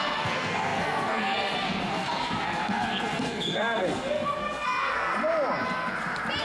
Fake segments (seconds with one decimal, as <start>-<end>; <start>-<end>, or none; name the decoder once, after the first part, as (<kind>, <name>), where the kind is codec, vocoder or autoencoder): 0.0-5.1 (codec, SNAC)